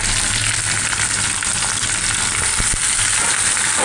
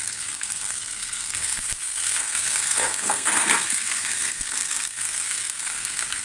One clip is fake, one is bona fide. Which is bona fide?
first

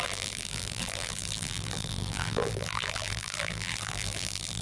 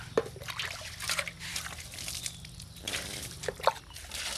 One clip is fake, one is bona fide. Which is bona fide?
second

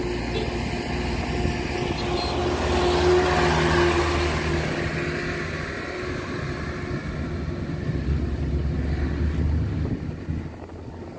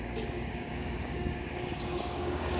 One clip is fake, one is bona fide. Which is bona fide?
first